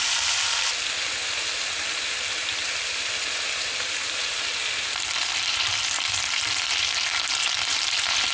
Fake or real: real